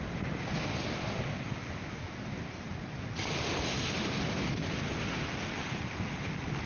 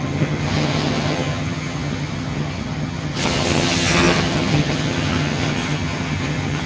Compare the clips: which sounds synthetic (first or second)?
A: second